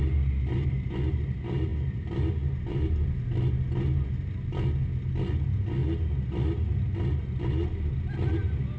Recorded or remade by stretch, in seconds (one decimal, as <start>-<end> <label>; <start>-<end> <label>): 0.0-8.8 recorded